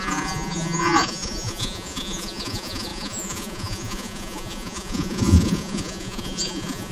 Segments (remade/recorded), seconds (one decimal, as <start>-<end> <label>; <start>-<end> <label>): 0.0-6.9 remade